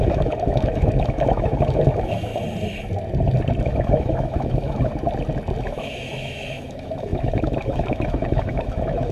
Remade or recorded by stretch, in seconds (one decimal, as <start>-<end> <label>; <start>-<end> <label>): 0.0-2.3 remade; 2.3-3.7 recorded; 3.7-4.9 remade; 4.9-5.6 recorded; 5.6-9.1 remade